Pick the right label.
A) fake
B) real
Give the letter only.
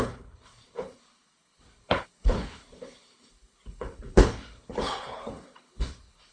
A